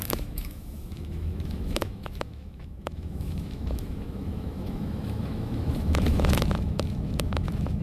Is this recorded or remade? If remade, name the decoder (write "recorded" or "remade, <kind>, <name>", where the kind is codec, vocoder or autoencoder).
remade, autoencoder, DAC-VAE